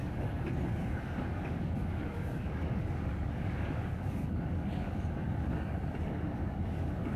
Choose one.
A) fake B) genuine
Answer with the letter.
A